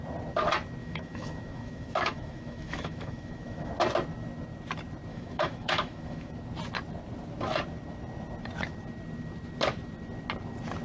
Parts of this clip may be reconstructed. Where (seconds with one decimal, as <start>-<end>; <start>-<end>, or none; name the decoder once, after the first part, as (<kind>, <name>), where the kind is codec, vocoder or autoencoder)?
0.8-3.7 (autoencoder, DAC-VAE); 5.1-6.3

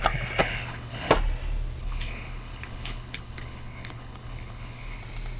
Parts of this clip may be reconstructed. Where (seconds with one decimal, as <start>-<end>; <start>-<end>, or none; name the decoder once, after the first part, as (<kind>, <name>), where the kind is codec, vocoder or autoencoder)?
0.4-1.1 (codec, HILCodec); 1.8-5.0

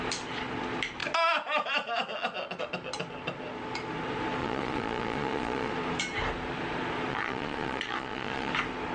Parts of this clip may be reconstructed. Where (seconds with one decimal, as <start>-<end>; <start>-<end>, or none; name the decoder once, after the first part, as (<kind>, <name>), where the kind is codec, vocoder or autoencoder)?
4.4-5.7 (vocoder, Vocos); 7.1-8.5

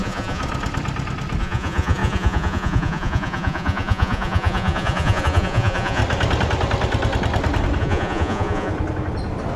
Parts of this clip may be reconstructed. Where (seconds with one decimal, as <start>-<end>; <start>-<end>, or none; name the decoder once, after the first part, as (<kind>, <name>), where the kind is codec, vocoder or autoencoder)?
0.0-0.4 (vocoder, Vocos); 1.4-6.0; 7.8-8.7

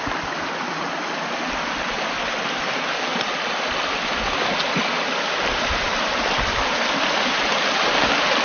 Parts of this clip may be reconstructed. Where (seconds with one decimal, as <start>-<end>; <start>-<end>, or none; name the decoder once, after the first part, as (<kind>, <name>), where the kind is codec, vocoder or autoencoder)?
none